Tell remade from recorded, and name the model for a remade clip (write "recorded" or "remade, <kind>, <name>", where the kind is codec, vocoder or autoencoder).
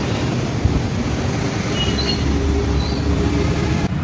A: remade, vocoder, BigVGAN v2